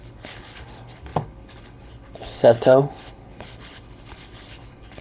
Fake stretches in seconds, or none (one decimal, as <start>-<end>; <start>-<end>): 0.0-5.0